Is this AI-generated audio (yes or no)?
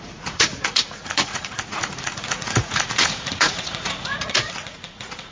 yes